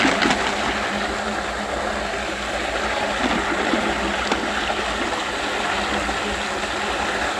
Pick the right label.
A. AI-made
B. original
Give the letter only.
B